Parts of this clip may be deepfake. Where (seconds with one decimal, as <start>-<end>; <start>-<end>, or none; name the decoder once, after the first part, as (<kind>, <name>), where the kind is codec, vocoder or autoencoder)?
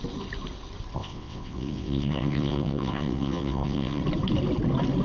1.0-4.0 (vocoder, WaveNeXt)